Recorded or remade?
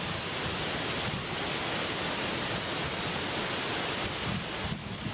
recorded